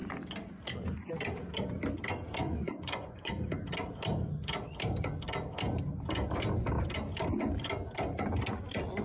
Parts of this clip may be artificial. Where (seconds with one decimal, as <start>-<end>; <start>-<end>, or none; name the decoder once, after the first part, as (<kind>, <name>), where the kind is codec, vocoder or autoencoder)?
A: 2.4-3.3 (vocoder, Vocos)